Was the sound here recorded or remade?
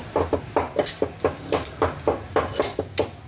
recorded